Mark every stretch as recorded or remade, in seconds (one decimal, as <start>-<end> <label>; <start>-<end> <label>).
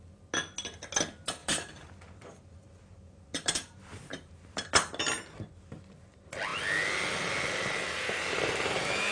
0.0-1.4 recorded; 1.4-4.5 remade; 4.5-9.1 recorded